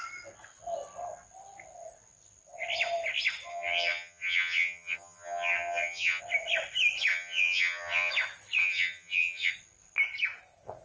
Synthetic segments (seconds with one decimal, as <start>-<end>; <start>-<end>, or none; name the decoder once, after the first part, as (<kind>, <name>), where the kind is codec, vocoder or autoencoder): 3.5-6.2 (vocoder, HiFi-GAN); 7.1-8.1; 8.6-9.5